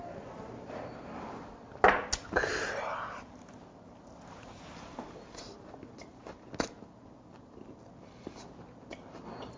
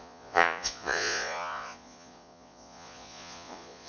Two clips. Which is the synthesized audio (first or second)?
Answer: second